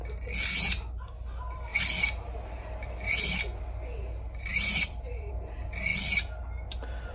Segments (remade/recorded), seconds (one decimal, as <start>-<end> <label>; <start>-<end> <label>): 0.0-4.5 recorded; 4.5-5.3 remade; 5.3-7.1 recorded